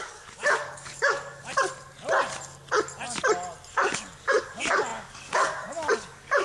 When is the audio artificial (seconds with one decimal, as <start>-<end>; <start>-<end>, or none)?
0.0-1.4; 3.7-6.4